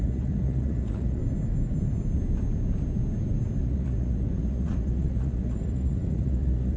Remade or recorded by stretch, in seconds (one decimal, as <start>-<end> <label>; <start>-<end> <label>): 0.0-1.2 remade; 1.2-3.6 recorded; 3.6-6.8 remade